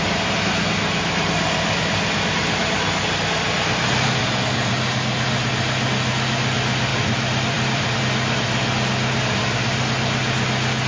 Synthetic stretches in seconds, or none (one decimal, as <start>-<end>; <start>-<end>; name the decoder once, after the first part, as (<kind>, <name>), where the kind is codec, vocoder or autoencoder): 6.9-8.0 (vocoder, BigVGAN v2)